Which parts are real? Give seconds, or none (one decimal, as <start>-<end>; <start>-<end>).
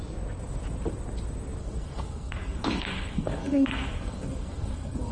0.0-1.6